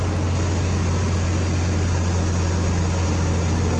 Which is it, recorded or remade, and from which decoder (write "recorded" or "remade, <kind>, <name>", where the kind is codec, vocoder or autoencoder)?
recorded